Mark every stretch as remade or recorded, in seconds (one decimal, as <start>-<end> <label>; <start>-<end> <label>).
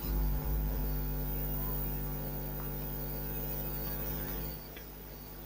0.0-0.8 remade; 0.8-4.1 recorded; 4.1-5.5 remade